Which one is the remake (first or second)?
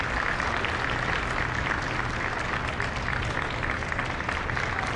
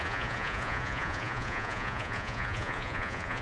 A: second